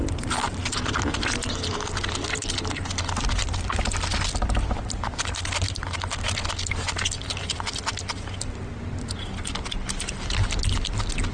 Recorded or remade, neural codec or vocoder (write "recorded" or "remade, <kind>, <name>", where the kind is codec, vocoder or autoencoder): recorded